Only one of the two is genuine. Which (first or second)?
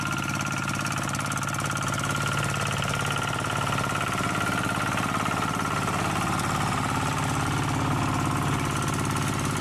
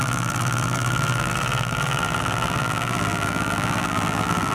first